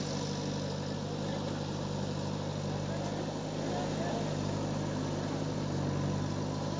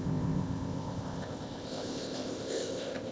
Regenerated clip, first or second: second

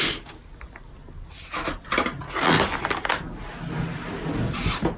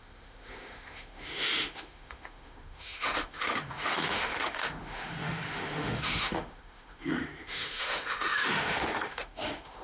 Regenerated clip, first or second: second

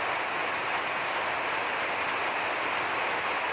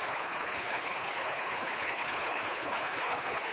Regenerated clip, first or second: second